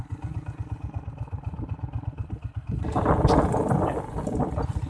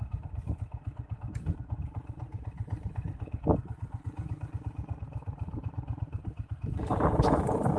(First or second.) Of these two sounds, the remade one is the second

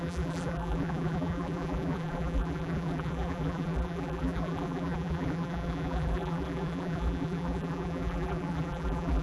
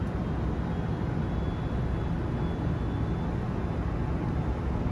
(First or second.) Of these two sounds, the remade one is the first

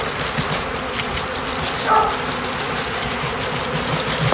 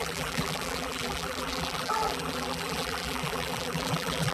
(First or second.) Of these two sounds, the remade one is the second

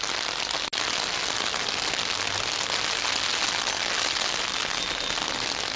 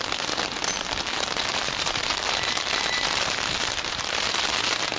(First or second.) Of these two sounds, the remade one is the second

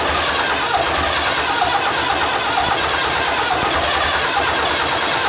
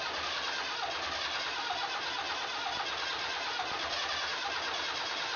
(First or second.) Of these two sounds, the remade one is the first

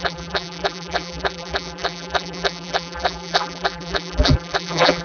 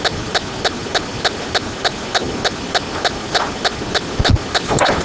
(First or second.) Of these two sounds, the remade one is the first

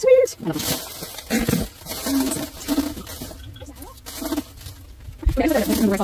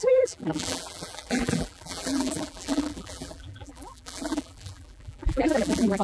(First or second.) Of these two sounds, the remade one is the second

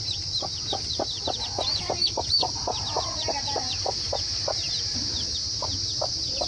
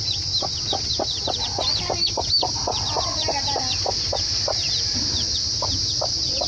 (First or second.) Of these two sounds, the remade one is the first